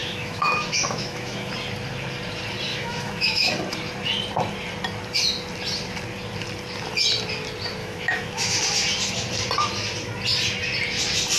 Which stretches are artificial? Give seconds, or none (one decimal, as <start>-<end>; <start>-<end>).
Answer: 0.0-1.5; 2.7-3.5; 7.8-8.6